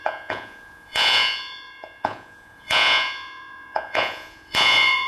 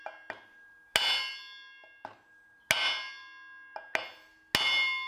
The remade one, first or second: first